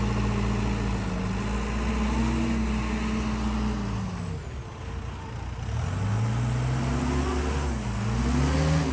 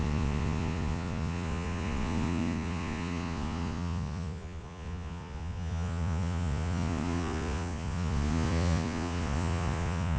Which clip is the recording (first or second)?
first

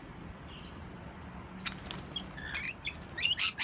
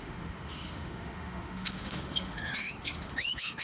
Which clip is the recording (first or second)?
first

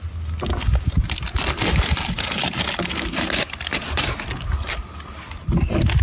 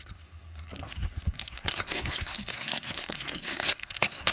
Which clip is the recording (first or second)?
first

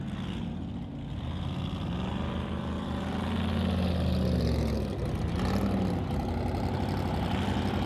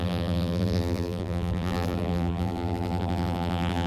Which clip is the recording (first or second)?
first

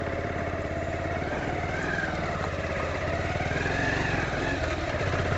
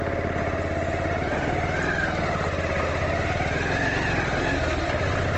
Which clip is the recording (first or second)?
second